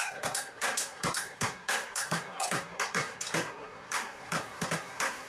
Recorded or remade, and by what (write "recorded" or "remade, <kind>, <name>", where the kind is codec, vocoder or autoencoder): remade, codec, SNAC